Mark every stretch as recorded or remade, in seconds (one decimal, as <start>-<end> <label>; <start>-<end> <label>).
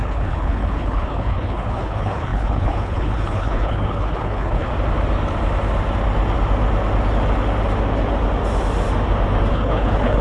0.0-4.7 remade; 4.7-9.5 recorded; 9.5-10.2 remade